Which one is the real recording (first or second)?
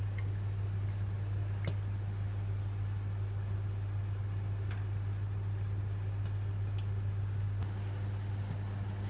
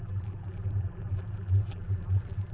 first